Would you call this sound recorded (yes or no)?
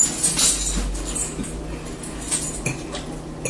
yes